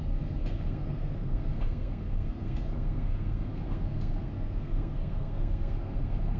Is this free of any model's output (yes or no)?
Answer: no